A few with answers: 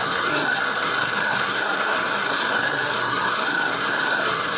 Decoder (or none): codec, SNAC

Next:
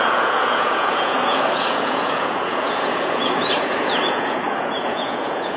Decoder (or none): vocoder, Vocos